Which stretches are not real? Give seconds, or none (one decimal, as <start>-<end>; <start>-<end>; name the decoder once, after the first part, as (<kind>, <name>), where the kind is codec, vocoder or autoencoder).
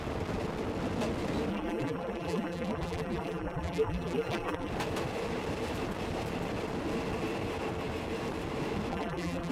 1.5-4.7 (vocoder, BigVGAN v2); 8.9-9.5